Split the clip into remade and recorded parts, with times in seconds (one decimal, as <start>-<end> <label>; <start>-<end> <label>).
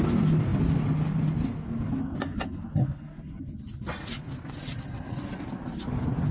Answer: 0.0-6.3 recorded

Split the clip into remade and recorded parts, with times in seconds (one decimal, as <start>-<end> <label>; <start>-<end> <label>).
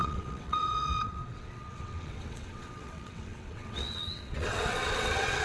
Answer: 0.0-5.4 remade